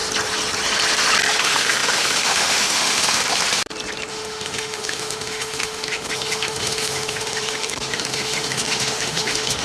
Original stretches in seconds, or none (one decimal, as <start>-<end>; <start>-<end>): 0.0-1.4; 3.2-4.1